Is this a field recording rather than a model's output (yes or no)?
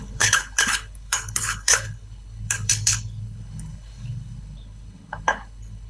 no